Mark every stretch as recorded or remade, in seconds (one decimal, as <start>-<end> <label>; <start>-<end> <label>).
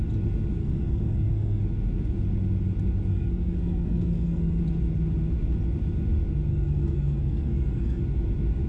0.0-0.6 recorded; 0.6-1.6 remade; 1.6-3.1 recorded; 3.1-4.6 remade; 4.6-6.5 recorded; 6.5-8.0 remade; 8.0-8.7 recorded